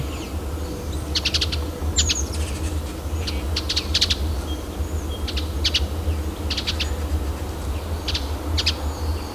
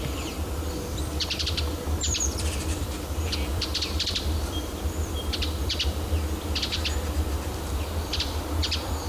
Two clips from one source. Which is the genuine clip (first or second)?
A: first